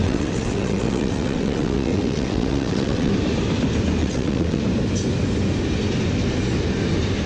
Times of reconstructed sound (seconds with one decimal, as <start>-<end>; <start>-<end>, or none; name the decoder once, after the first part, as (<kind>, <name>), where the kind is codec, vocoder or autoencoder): 0.0-3.1 (vocoder, WaveNeXt); 4.0-4.6